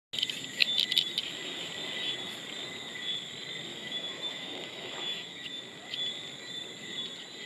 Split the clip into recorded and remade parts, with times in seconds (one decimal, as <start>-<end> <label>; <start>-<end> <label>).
0.0-3.7 recorded; 3.7-5.6 remade; 5.6-7.5 recorded